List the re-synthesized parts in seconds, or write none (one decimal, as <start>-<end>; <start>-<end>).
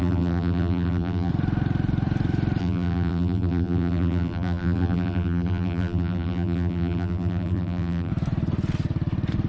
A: 0.0-1.3; 2.6-8.1